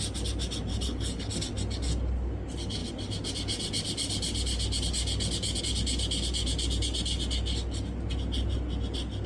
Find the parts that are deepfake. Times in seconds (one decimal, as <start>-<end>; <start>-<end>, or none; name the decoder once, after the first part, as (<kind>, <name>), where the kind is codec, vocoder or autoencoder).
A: 0.7-1.3 (codec, HILCodec)